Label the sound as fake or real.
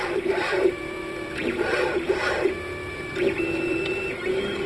fake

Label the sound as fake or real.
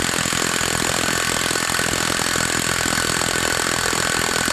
real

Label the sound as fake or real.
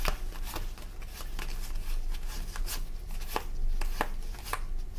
real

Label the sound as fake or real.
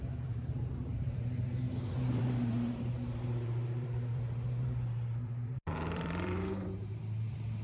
fake